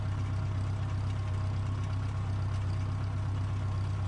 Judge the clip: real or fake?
real